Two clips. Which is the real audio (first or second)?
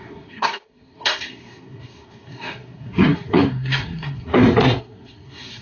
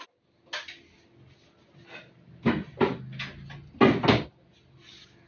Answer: second